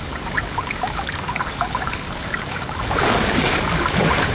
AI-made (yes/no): yes